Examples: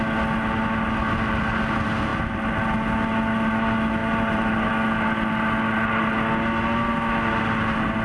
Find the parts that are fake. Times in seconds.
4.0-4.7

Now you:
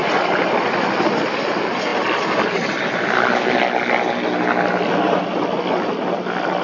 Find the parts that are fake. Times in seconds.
0.0-0.5

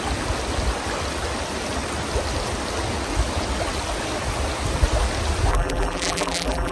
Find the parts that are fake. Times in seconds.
5.5-6.7

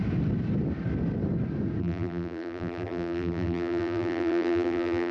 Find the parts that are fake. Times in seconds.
1.8-5.1

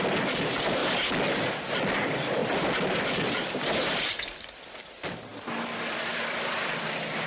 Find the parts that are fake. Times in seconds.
0.0-0.8; 1.7-5.3; 5.9-7.3